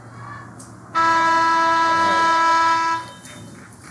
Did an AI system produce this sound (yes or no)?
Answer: no